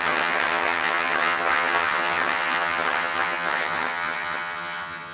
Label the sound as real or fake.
fake